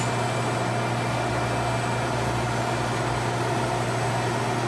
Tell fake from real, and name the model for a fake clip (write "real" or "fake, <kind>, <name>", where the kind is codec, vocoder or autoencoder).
real